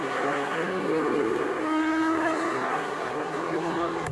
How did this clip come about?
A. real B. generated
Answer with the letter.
B